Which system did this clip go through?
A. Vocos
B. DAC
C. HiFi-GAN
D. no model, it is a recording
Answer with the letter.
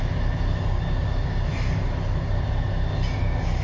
D